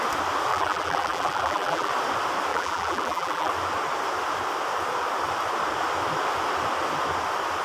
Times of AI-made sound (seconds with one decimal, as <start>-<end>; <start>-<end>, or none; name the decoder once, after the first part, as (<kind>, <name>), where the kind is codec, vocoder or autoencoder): 0.5-1.9 (vocoder, BigVGAN v2); 2.5-3.5